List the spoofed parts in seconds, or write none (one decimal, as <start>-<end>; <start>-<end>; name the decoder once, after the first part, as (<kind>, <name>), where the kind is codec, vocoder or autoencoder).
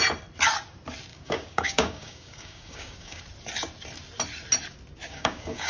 1.1-3.2 (codec, DAC); 5.0-5.7